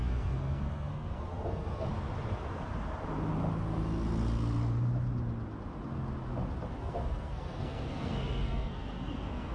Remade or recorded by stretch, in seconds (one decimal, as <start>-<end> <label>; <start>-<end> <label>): 0.0-1.9 remade; 1.9-6.8 recorded; 6.8-9.5 remade

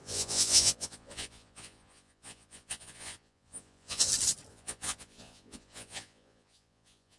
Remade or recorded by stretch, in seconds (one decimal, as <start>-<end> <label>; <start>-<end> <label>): 0.0-4.1 remade; 4.1-4.5 recorded; 4.5-7.2 remade

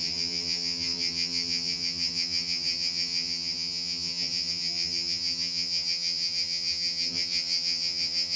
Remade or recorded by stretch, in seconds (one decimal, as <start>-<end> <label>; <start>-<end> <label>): 0.0-8.4 remade

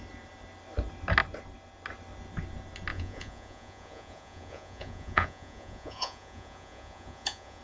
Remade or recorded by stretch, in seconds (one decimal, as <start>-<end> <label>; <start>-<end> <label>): 0.0-2.9 recorded; 2.9-7.6 remade

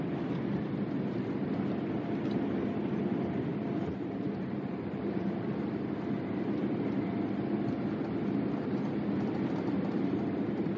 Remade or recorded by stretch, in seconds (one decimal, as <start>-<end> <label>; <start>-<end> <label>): 0.0-3.5 recorded; 3.5-5.9 remade; 5.9-10.8 recorded

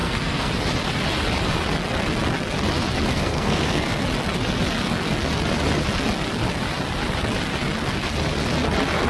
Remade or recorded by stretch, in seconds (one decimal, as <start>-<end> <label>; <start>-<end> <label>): 0.0-0.5 remade; 0.5-3.1 recorded; 3.1-4.0 remade; 4.0-9.1 recorded

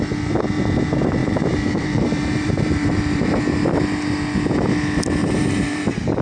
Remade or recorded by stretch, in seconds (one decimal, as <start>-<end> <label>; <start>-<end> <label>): 0.0-1.2 recorded; 1.2-3.4 remade; 3.4-5.2 recorded; 5.2-5.8 remade; 5.8-6.2 recorded